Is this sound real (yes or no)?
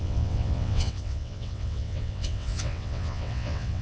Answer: no